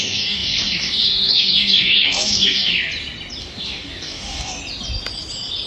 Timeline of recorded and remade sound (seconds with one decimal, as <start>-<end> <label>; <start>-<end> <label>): 0.0-2.7 remade; 2.7-3.4 recorded; 3.4-4.6 remade; 4.6-5.7 recorded